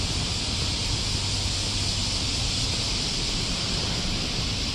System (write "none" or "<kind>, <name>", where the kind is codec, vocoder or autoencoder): none